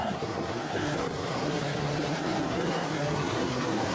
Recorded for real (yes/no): no